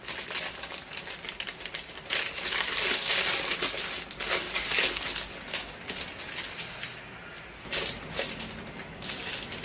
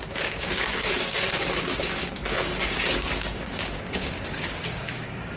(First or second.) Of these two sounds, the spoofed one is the second